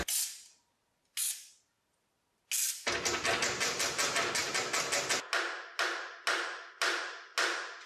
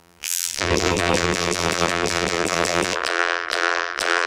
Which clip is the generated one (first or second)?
second